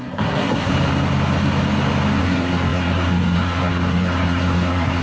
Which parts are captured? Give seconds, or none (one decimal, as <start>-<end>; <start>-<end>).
0.7-2.2